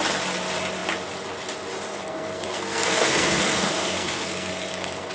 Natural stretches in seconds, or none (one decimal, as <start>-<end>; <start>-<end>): 0.0-1.9